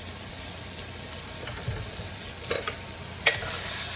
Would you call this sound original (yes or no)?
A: no